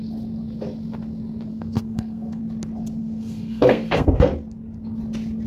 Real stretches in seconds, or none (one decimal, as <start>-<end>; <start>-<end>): 0.0-1.5; 2.4-3.0; 4.3-5.5